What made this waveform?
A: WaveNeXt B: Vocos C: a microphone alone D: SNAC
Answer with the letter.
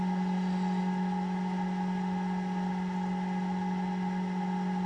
C